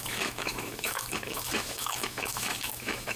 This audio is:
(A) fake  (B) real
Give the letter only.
A